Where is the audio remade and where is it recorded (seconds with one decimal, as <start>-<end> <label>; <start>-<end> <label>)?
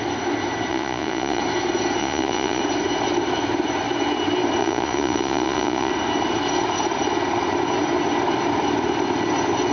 0.0-0.7 recorded; 0.7-1.4 remade; 1.4-2.0 recorded; 2.0-2.6 remade; 2.6-4.6 recorded; 4.6-5.9 remade; 5.9-9.7 recorded